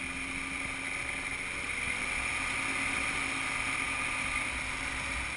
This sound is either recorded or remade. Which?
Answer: recorded